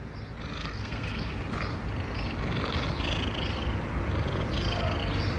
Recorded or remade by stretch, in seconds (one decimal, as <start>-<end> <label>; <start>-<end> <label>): 0.0-0.6 recorded; 0.6-1.4 remade; 1.4-5.4 recorded